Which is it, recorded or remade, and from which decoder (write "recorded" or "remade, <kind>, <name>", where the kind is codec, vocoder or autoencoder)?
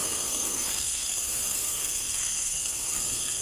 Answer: remade, codec, SNAC